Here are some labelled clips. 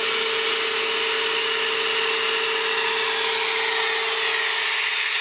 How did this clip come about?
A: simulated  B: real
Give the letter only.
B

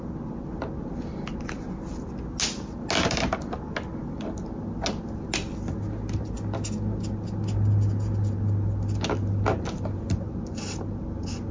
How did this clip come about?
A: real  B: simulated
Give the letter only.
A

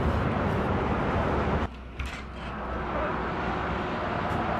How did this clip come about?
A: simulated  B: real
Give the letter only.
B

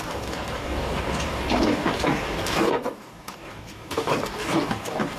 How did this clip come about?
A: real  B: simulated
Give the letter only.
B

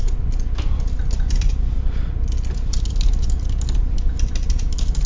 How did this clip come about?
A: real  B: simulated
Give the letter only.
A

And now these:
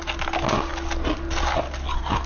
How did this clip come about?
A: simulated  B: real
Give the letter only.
B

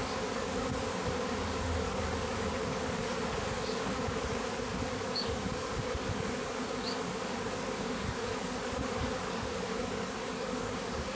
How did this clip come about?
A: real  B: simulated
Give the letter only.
B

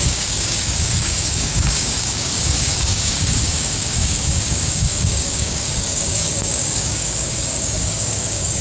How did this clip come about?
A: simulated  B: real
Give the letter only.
A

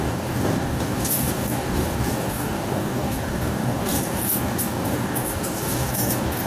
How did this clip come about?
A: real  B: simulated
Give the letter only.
B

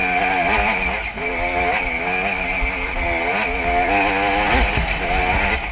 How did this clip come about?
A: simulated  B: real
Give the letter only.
B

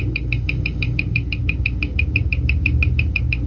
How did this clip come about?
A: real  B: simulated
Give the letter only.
B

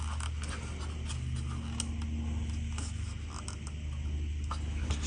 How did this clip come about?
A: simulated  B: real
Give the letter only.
B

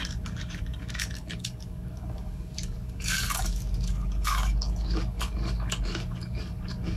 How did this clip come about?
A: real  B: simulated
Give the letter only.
B